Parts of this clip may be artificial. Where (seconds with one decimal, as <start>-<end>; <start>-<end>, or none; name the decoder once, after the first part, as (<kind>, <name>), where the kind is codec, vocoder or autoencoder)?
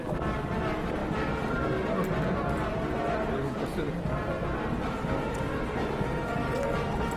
none